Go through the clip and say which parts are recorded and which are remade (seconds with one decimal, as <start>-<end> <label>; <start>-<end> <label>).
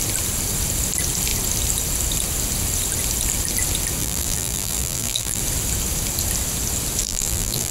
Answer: 0.0-4.0 recorded; 4.0-5.4 remade; 5.4-7.0 recorded; 7.0-7.7 remade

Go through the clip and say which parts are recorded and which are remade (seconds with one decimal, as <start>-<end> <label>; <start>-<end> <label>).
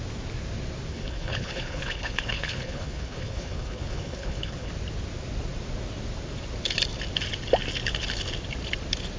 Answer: 0.0-0.9 recorded; 0.9-4.7 remade; 4.7-9.2 recorded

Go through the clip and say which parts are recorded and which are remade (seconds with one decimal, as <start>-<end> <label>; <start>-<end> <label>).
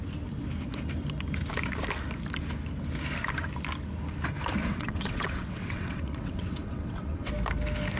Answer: 0.0-4.6 recorded; 4.6-7.3 remade; 7.3-8.0 recorded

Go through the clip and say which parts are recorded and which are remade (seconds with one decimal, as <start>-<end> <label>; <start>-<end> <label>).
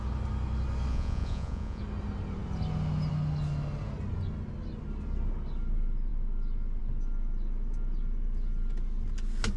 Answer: 0.0-0.9 recorded; 0.9-1.8 remade; 1.8-9.6 recorded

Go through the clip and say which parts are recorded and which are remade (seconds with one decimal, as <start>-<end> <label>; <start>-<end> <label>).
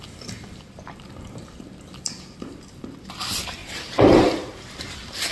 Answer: 0.0-3.6 recorded; 3.6-4.8 remade; 4.8-5.3 recorded